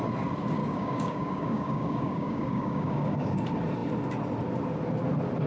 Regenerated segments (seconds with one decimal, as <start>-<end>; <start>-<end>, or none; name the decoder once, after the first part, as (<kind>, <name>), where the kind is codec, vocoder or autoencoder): 0.6-3.4 (codec, DAC)